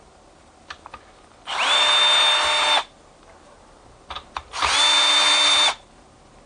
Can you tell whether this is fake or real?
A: real